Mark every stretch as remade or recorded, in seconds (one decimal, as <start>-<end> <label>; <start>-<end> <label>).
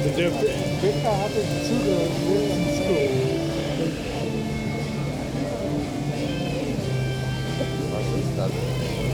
0.0-3.0 recorded; 3.0-4.2 remade; 4.2-9.1 recorded